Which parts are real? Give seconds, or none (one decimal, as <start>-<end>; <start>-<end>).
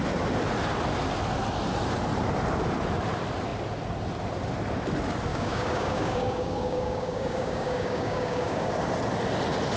0.0-5.3; 8.7-9.8